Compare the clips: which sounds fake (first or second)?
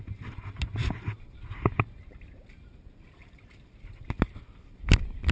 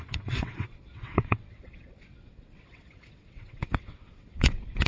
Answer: second